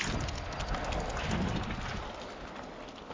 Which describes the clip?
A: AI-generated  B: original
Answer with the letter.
B